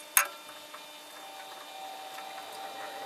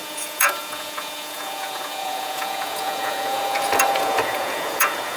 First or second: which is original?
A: first